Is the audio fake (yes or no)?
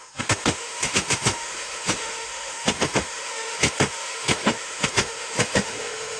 yes